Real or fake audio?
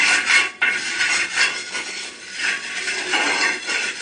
fake